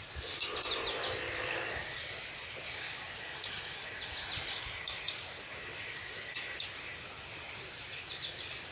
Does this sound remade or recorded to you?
recorded